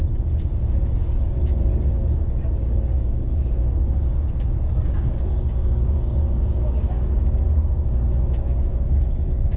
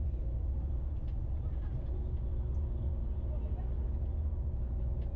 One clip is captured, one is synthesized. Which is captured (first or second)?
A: second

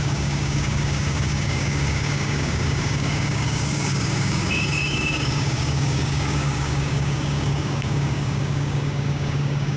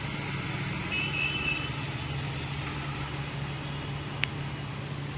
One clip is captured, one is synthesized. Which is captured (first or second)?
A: second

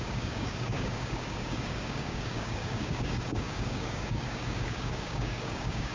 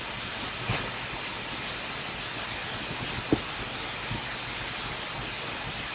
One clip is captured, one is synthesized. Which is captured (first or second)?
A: second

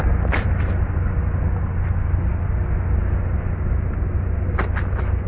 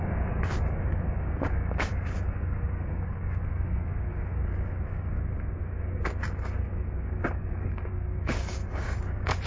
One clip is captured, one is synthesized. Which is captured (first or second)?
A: first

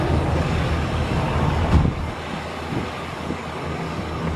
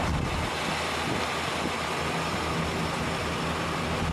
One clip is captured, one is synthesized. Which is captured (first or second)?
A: second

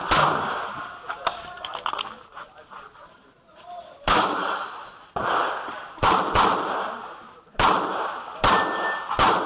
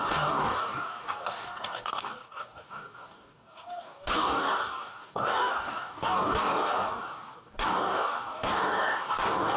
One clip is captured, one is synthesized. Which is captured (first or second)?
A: first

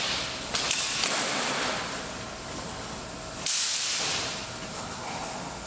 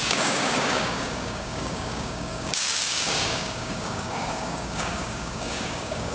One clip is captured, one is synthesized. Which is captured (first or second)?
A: first